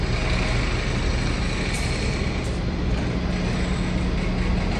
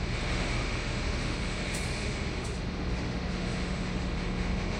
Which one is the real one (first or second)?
first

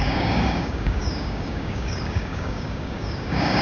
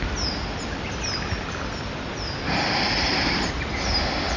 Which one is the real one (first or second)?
second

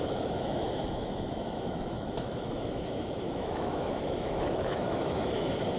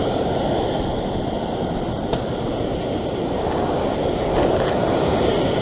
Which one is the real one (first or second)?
second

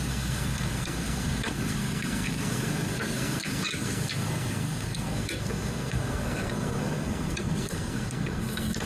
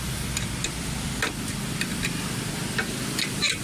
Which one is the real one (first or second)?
second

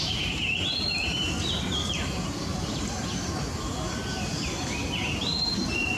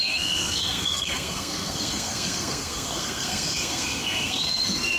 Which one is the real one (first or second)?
first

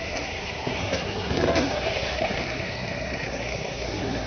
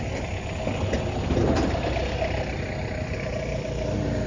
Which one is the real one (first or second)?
second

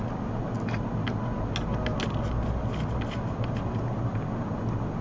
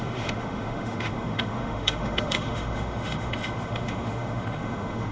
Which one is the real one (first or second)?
first